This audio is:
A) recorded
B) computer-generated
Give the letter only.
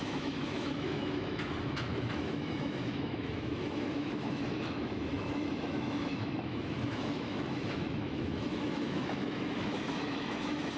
B